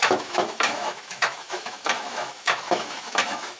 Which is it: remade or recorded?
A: remade